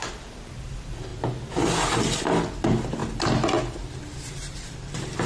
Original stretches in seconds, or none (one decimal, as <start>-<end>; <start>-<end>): 3.0-4.6